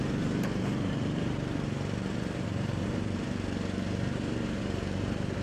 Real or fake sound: fake